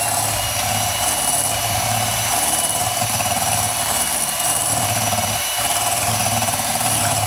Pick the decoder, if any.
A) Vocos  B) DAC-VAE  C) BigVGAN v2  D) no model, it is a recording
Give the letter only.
C